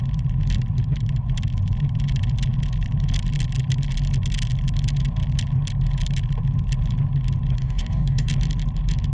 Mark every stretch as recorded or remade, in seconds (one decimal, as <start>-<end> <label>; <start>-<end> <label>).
0.0-7.6 recorded; 7.6-8.3 remade; 8.3-9.1 recorded